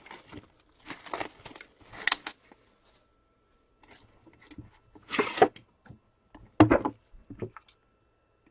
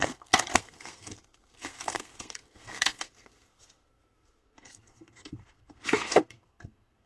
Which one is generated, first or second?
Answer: second